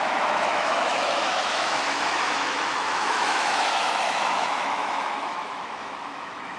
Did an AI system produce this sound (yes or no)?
yes